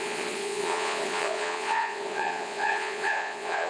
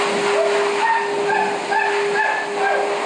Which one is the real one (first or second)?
second